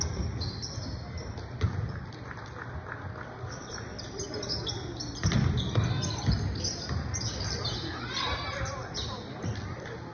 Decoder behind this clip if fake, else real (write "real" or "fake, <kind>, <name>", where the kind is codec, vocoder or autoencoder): real